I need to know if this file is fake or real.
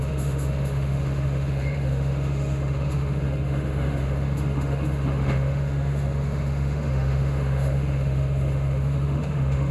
fake